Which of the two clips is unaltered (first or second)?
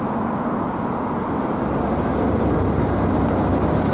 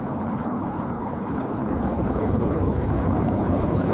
first